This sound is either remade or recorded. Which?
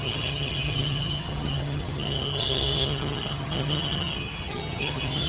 remade